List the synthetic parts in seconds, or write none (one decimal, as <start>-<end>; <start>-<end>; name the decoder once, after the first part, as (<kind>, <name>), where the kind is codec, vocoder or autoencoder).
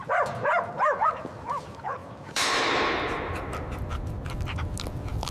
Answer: 2.0-4.1 (vocoder, BigVGAN v2)